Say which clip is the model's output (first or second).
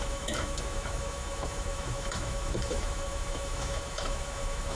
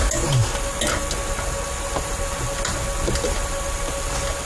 first